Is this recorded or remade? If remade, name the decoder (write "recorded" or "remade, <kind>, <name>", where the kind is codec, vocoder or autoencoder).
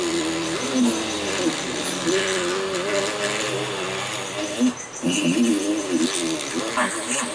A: recorded